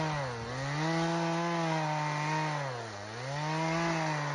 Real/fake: real